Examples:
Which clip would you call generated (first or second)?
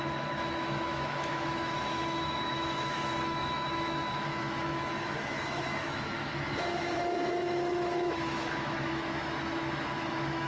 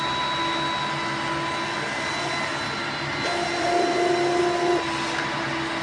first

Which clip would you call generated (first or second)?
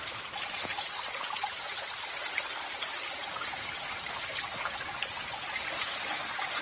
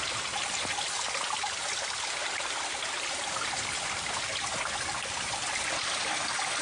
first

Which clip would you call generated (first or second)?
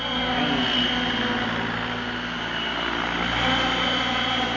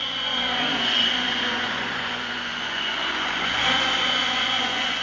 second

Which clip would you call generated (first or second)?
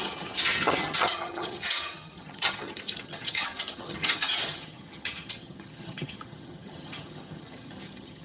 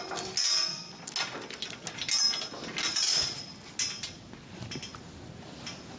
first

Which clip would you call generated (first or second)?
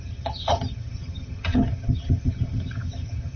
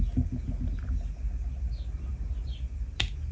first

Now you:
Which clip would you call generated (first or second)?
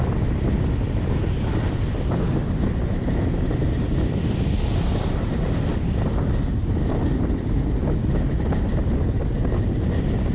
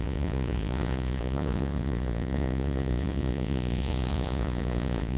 second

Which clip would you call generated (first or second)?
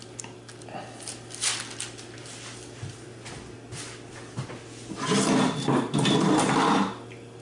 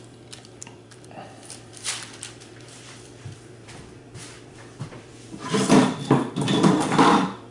second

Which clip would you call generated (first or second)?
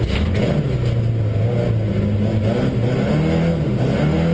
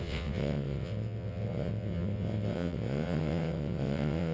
second